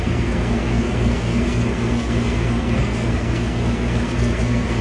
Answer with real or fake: fake